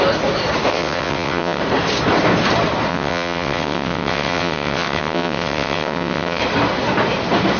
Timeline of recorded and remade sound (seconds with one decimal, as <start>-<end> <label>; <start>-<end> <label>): 0.0-0.7 recorded; 0.7-1.6 remade; 1.6-2.9 recorded; 2.9-6.4 remade; 6.4-7.6 recorded